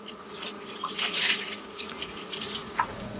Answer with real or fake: fake